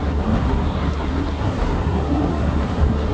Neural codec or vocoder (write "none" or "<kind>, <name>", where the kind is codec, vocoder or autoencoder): codec, SNAC